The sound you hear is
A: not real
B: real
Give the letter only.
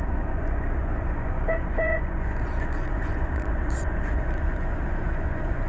A